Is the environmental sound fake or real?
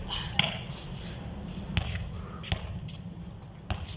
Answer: real